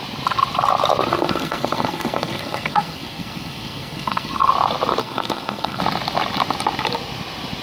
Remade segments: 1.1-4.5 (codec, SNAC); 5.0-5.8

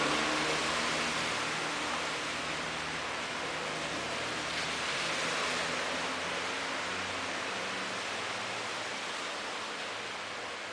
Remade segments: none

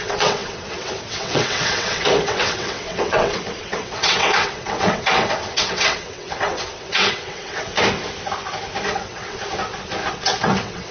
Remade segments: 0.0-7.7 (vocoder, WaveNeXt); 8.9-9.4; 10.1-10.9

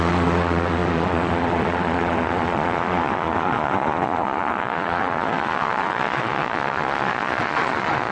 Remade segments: 0.0-8.1 (vocoder, Vocos)

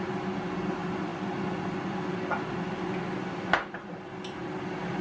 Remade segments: none

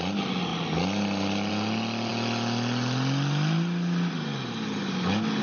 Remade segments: none

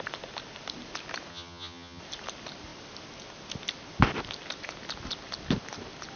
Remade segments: 1.3-2.0 (vocoder, HiFi-GAN)